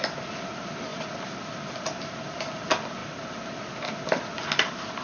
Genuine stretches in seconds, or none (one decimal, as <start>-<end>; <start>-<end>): 0.0-5.0